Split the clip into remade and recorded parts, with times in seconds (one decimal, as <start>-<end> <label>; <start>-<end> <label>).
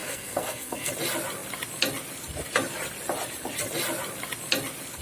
0.0-0.9 remade; 0.9-5.0 recorded